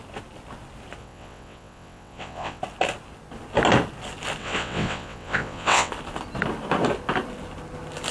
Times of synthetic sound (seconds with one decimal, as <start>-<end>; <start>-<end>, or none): 1.0-2.6; 4.4-5.9